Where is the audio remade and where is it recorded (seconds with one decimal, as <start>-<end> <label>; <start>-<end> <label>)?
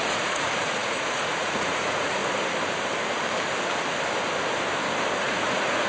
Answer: 0.0-2.2 remade; 2.2-5.2 recorded; 5.2-5.9 remade